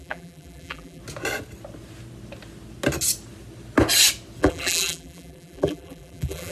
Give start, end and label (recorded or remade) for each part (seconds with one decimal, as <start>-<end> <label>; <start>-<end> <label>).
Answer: 0.0-1.0 remade; 1.0-4.4 recorded; 4.4-6.5 remade